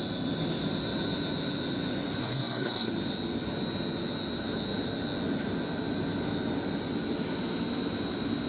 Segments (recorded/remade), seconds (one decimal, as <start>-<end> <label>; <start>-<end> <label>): 0.0-2.2 recorded; 2.2-2.9 remade; 2.9-8.5 recorded